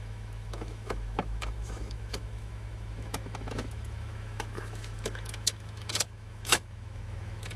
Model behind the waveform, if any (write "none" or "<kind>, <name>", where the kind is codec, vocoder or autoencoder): autoencoder, DAC-VAE